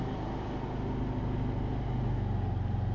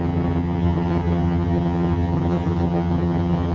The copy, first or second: second